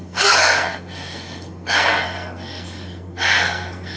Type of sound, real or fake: fake